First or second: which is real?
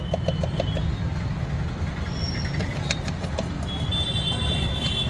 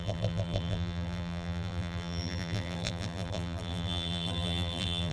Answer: first